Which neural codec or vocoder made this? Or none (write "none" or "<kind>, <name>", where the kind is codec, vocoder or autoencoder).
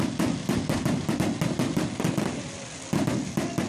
none